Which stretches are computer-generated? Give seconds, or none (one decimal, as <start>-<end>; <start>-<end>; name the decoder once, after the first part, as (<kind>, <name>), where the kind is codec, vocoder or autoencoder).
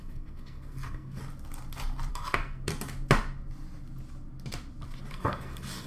0.0-1.2 (codec, SNAC); 2.1-2.7; 5.1-5.9